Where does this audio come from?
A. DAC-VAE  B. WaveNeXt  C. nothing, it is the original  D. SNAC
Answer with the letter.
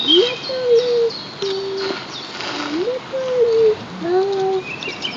C